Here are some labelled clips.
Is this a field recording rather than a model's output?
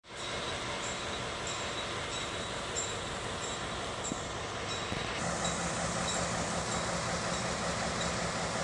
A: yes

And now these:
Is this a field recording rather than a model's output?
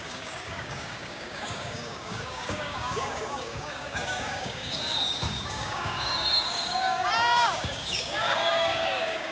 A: no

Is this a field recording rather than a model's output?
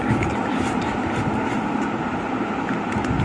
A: yes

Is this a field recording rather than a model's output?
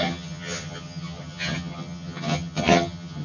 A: no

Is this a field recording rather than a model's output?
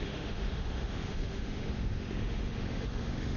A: no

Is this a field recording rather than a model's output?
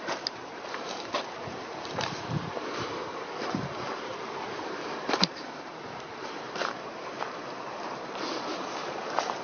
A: no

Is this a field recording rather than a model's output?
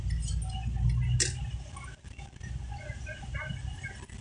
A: yes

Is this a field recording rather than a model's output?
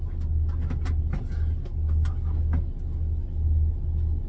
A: yes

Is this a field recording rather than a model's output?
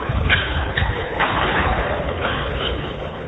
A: no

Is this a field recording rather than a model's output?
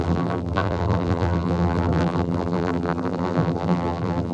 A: no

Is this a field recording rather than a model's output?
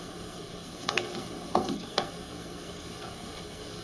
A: no